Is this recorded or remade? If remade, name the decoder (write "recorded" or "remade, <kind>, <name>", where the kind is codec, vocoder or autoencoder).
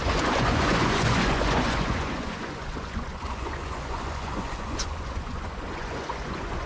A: remade, vocoder, Vocos